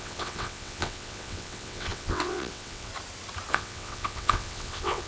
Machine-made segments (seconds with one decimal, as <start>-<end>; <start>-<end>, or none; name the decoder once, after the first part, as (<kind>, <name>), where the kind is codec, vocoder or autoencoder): 0.0-2.9 (vocoder, WaveNeXt); 3.5-5.1